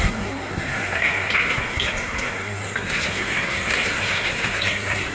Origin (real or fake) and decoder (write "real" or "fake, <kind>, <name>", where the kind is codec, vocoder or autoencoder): fake, codec, SNAC